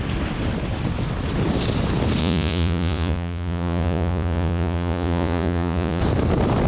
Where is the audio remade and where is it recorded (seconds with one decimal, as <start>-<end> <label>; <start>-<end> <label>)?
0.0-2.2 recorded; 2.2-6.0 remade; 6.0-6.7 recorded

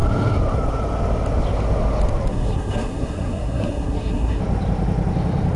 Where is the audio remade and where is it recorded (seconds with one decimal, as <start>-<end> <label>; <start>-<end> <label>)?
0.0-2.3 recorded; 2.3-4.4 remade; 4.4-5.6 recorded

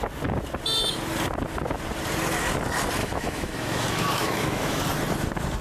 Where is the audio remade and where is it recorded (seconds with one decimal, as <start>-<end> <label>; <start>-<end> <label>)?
0.0-3.0 recorded; 3.0-4.8 remade; 4.8-5.6 recorded

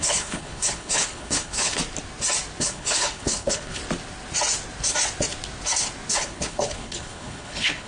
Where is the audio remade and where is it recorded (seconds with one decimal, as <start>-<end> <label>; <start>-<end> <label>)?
0.0-1.8 remade; 1.8-2.6 recorded; 2.6-3.8 remade; 3.8-6.1 recorded; 6.1-7.9 remade

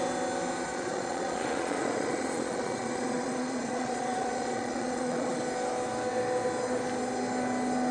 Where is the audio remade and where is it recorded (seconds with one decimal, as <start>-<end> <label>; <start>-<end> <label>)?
0.0-0.7 recorded; 0.7-5.4 remade; 5.4-7.9 recorded

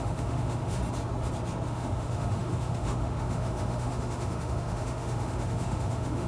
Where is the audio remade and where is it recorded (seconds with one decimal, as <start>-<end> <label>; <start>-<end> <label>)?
0.0-0.8 remade; 0.8-1.7 recorded; 1.7-6.3 remade